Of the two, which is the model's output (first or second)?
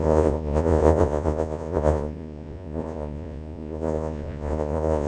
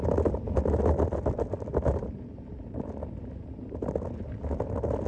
first